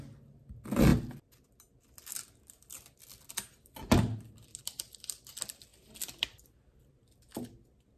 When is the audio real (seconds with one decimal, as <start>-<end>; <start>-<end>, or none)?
0.0-8.0